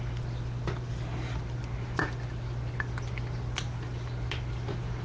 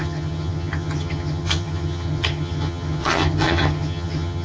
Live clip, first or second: first